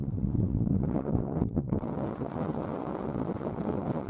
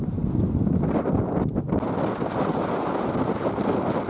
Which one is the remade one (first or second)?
first